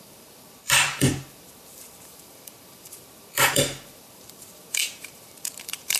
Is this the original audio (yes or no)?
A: no